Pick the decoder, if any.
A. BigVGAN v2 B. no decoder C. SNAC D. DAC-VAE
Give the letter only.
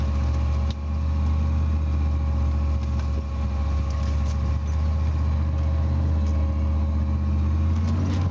B